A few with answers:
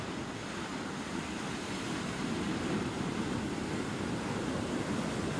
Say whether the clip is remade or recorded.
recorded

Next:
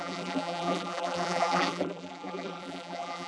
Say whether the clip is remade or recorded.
remade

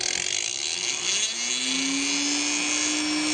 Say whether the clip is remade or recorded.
recorded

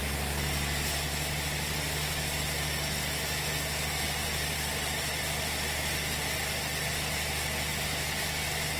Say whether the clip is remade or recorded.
recorded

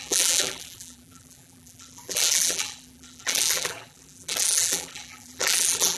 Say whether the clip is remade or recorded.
remade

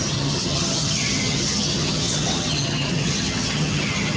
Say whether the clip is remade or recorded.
remade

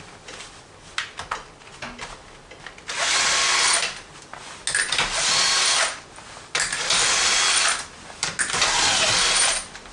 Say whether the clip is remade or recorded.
recorded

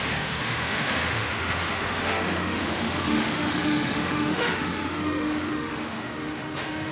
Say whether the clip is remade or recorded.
remade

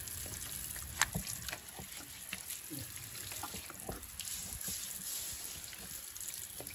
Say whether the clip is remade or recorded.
recorded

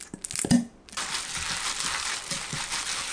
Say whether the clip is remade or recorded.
recorded